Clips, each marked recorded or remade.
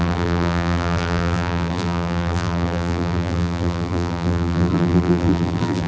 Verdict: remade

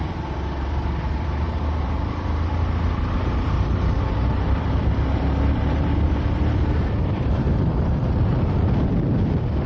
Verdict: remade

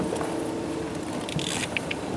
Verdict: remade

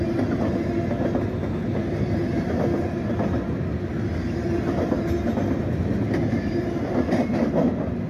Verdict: recorded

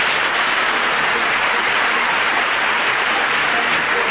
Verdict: remade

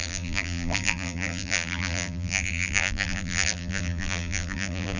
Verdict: remade